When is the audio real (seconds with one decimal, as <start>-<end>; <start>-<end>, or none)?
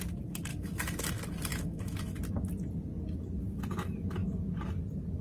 0.0-0.5; 1.1-1.5; 2.2-5.2